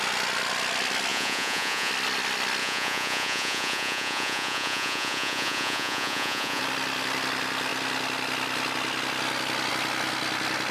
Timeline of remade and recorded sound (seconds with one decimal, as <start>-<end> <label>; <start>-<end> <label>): 0.0-1.1 recorded; 1.1-1.9 remade; 1.9-2.6 recorded; 2.6-6.6 remade; 6.6-10.7 recorded